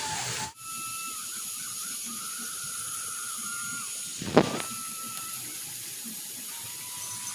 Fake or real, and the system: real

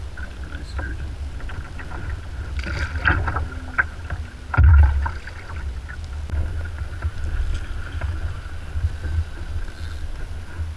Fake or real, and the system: real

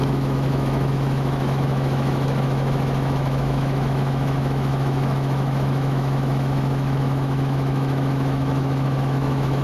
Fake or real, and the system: fake, autoencoder, DAC-VAE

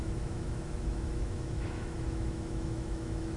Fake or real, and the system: fake, autoencoder, DAC-VAE